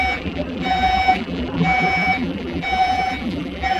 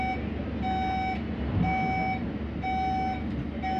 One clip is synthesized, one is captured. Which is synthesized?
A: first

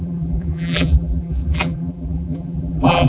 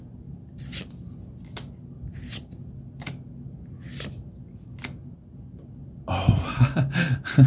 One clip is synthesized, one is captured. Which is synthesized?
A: first